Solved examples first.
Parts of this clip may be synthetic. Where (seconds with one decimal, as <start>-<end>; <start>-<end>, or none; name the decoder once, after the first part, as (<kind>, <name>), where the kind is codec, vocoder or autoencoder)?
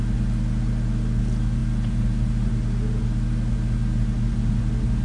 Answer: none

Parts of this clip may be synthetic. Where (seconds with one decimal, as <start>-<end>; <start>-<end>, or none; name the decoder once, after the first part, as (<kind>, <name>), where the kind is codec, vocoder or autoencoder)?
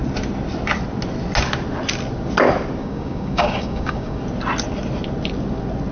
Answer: 2.8-4.2 (codec, DAC)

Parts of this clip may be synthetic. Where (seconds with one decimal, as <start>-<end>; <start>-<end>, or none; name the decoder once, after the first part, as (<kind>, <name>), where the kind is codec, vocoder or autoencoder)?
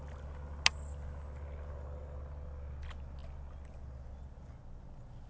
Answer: none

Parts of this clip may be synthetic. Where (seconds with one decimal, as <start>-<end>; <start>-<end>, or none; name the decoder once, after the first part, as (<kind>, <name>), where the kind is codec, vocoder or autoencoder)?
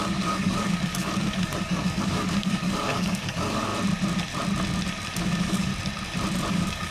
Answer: 0.0-3.7 (codec, DAC); 5.2-5.7; 6.5-6.9